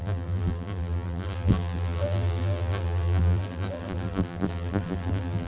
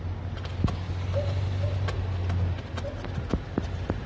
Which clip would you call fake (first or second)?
first